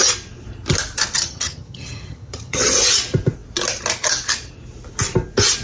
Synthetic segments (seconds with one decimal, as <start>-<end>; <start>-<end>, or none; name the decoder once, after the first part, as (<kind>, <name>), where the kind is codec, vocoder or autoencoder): 1.1-2.7 (vocoder, HiFi-GAN)